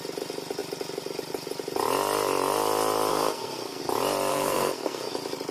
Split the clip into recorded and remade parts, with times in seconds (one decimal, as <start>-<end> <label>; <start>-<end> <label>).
0.0-3.1 recorded; 3.1-3.8 remade; 3.8-4.3 recorded; 4.3-5.1 remade; 5.1-5.5 recorded